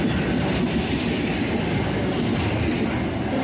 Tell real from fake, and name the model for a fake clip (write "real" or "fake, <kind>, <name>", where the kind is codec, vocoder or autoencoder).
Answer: real